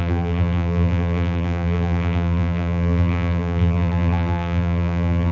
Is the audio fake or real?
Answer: fake